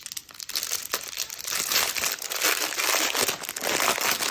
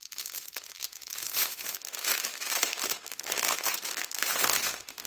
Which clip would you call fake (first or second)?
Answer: second